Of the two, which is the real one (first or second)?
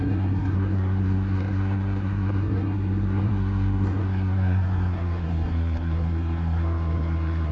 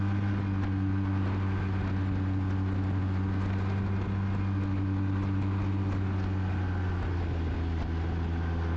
second